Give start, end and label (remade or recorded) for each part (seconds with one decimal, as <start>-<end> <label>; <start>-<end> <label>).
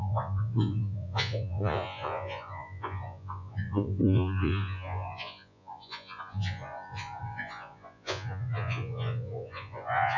0.0-10.2 remade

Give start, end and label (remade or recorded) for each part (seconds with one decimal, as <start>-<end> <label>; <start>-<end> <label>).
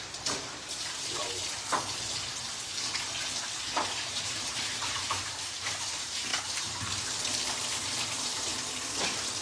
0.0-1.2 remade; 1.2-4.1 recorded; 4.1-6.3 remade; 6.3-7.8 recorded; 7.8-8.5 remade; 8.5-9.4 recorded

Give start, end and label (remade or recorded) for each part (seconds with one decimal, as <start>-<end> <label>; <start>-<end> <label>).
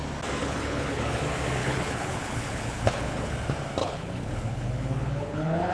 0.0-0.4 recorded; 0.4-1.2 remade; 1.2-1.6 recorded; 1.6-3.3 remade; 3.3-3.8 recorded; 3.8-5.7 remade